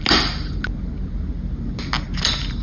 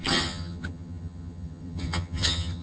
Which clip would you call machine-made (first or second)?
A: second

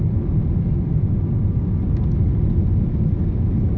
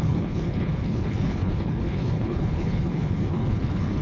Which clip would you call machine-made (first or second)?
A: second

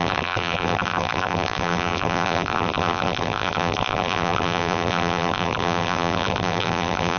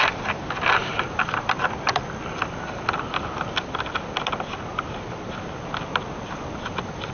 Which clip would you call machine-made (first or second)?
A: first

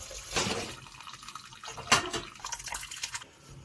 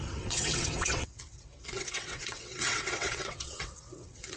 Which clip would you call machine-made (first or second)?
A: second